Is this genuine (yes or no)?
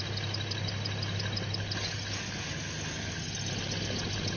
yes